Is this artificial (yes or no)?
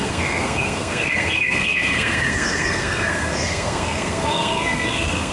yes